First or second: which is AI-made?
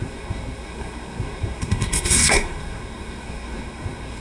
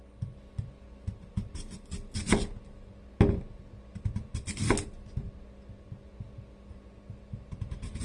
first